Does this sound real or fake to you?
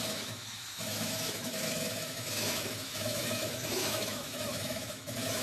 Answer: fake